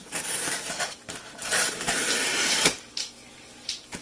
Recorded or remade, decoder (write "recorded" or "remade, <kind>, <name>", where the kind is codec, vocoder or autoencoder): remade, vocoder, BigVGAN v2